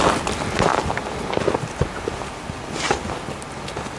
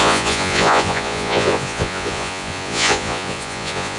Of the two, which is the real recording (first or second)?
first